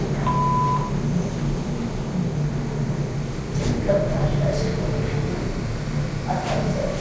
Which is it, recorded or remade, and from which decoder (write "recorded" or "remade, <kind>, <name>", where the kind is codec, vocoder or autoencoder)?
recorded